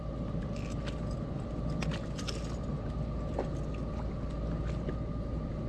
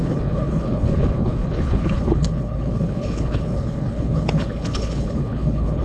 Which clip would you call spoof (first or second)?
second